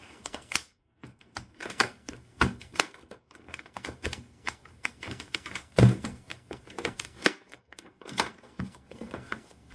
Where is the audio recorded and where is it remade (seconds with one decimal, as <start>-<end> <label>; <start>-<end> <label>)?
0.0-9.7 remade